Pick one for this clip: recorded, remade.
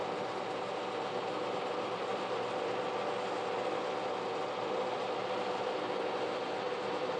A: recorded